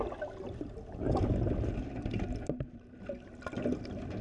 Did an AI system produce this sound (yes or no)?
no